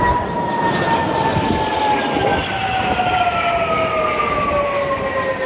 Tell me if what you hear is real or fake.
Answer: real